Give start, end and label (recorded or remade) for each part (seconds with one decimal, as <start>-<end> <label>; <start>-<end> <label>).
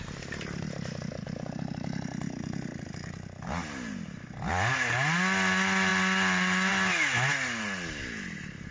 0.0-8.7 recorded